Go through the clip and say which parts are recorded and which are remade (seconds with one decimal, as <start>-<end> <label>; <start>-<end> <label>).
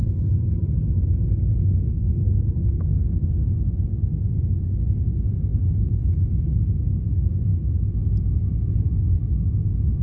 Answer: 0.0-1.8 recorded; 1.8-3.1 remade; 3.1-10.0 recorded